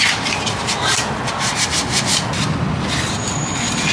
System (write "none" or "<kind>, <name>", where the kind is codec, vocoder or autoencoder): none